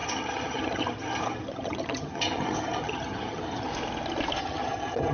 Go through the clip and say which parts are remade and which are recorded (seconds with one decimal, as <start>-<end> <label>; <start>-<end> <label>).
0.0-3.7 remade; 3.7-4.4 recorded; 4.4-5.1 remade